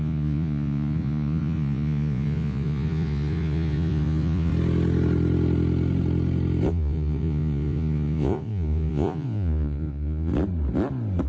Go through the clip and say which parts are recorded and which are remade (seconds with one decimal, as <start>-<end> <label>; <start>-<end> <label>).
0.0-4.5 remade; 4.5-6.7 recorded; 6.7-10.3 remade; 10.3-11.3 recorded